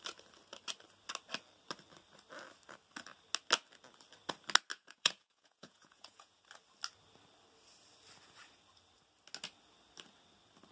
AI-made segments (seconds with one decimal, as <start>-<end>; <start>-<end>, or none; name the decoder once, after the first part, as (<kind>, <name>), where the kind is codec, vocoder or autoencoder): 4.7-6.4 (vocoder, Vocos)